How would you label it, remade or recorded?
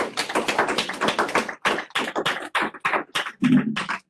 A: recorded